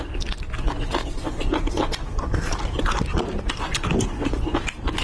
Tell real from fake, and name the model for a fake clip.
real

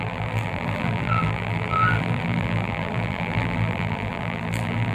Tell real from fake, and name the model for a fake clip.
fake, vocoder, BigVGAN v2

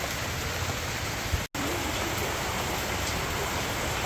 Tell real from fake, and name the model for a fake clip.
real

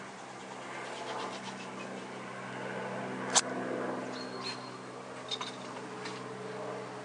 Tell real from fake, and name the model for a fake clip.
real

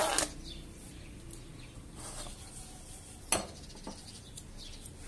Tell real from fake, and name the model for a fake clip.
real